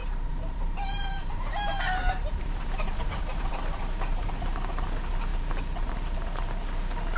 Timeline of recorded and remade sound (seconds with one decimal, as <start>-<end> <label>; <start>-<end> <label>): 0.0-4.3 remade; 4.3-7.2 recorded